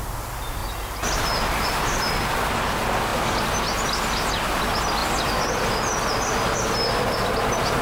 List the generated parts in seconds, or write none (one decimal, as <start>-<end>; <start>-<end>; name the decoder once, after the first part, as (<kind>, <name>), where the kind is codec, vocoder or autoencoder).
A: 0.6-2.0 (vocoder, BigVGAN v2)